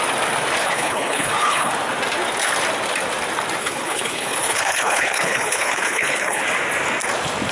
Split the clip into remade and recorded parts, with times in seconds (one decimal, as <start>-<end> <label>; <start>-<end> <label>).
0.0-0.6 recorded; 0.6-1.7 remade; 1.7-3.6 recorded; 3.6-6.4 remade; 6.4-7.5 recorded